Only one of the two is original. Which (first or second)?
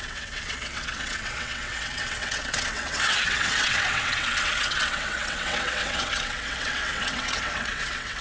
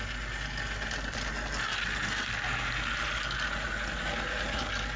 second